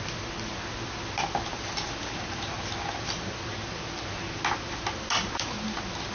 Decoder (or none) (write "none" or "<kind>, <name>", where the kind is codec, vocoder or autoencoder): none